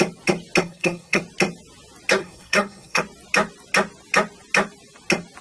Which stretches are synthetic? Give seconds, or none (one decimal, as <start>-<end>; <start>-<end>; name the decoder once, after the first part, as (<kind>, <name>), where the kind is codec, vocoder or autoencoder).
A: 0.6-1.2 (codec, SNAC); 2.2-3.0